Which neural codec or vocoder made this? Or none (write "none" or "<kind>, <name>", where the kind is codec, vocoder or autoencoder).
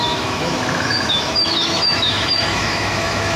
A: autoencoder, DAC-VAE